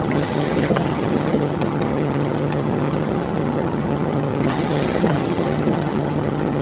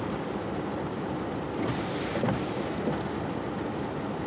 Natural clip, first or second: second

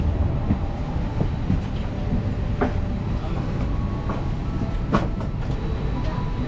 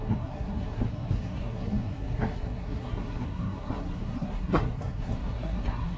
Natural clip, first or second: first